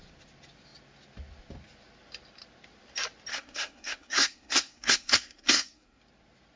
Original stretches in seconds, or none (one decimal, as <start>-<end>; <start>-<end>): 0.0-3.3; 6.0-6.6